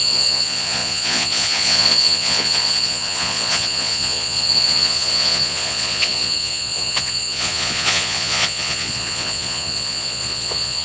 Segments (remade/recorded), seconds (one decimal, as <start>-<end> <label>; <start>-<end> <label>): 0.0-10.8 remade